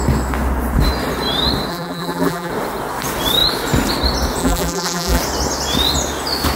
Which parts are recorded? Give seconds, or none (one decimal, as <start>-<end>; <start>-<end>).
0.0-1.7; 2.5-4.4; 5.2-6.6

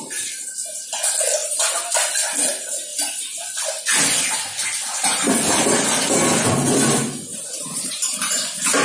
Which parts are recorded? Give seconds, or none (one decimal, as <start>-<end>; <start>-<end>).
0.0-1.4; 2.1-7.3; 8.3-8.8

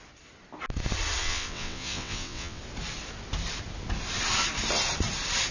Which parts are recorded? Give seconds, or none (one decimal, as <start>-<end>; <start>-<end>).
0.0-1.2; 2.6-5.5

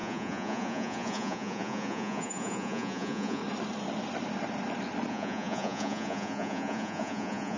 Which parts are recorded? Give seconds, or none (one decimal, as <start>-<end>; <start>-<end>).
3.4-5.1

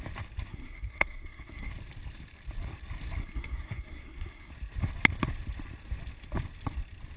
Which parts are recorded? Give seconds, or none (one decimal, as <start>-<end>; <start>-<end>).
0.0-0.5; 1.7-3.2; 4.5-7.2

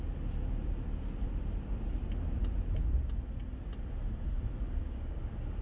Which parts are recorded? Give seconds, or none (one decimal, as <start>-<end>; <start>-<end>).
0.0-4.8